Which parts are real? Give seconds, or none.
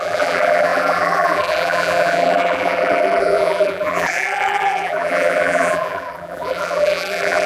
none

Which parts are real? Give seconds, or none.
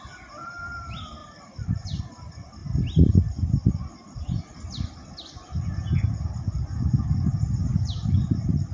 0.0-1.2; 2.0-8.7